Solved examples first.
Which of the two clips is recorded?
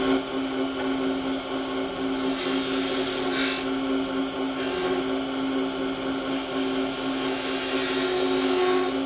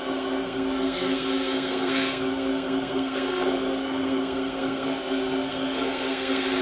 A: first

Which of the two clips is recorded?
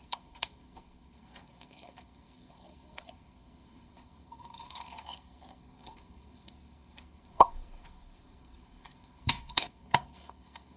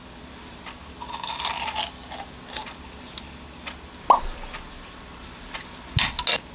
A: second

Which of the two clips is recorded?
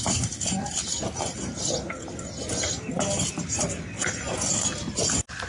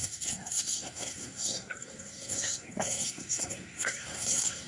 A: first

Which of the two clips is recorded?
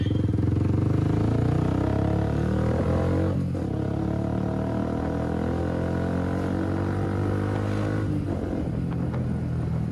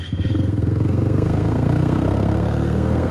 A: first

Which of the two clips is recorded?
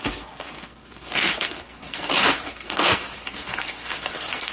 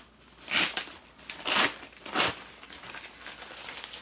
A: second